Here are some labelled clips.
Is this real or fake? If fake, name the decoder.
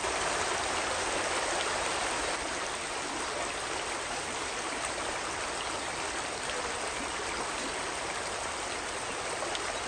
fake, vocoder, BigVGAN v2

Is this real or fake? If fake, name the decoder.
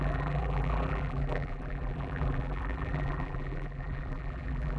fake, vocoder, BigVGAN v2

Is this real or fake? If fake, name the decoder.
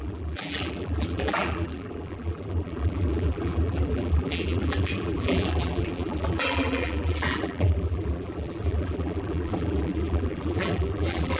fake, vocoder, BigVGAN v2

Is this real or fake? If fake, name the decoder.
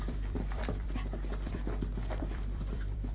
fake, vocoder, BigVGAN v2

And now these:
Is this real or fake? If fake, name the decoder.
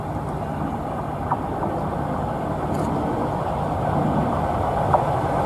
real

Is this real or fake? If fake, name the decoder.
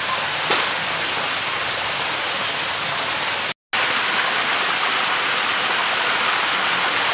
real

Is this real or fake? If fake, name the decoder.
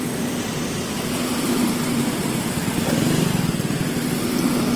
fake, vocoder, BigVGAN v2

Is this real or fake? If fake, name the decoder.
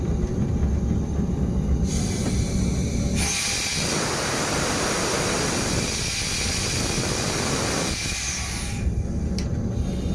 real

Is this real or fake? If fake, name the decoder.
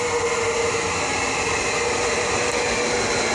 real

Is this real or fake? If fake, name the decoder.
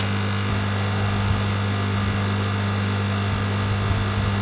real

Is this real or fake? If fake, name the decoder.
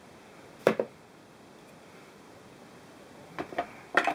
fake, vocoder, BigVGAN v2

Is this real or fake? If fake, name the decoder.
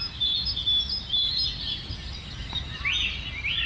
real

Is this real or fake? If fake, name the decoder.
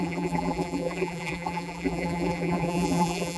fake, vocoder, BigVGAN v2